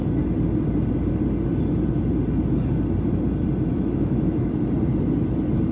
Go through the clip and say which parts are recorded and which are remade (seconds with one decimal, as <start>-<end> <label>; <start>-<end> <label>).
0.0-3.7 recorded; 3.7-4.5 remade; 4.5-5.7 recorded